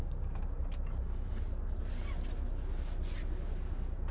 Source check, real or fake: real